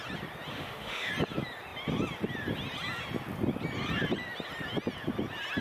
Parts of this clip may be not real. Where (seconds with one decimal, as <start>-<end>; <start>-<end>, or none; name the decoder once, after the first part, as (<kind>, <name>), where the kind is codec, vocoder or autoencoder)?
0.5-1.1 (autoencoder, DAC-VAE)